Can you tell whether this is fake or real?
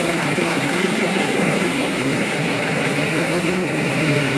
fake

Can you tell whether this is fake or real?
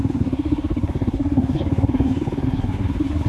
fake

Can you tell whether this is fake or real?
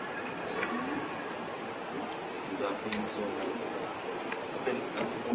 real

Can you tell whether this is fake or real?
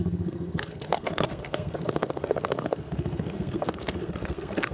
fake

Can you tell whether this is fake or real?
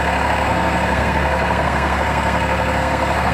fake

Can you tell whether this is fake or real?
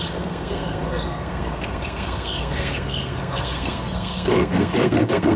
fake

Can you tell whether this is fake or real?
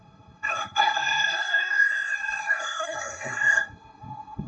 fake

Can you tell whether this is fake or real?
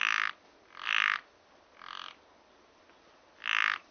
real